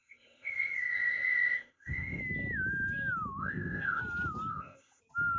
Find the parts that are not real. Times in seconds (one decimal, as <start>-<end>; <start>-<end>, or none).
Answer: 0.0-2.2; 3.4-4.0; 4.5-5.0